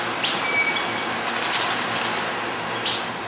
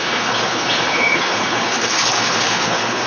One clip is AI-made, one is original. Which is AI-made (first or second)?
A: second